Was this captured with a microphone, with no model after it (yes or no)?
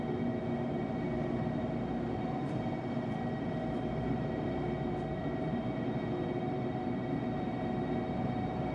yes